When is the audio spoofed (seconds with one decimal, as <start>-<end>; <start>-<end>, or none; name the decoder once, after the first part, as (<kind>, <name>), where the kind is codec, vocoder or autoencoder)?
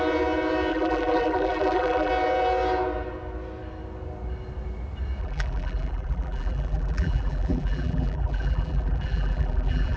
0.7-2.1 (vocoder, BigVGAN v2); 5.2-10.0